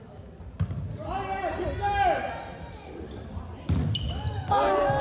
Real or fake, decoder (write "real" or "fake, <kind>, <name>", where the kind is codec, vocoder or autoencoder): real